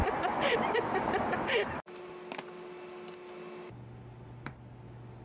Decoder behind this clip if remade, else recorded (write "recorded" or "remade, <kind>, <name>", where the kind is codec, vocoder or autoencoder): recorded